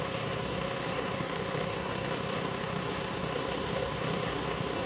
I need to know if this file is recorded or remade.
remade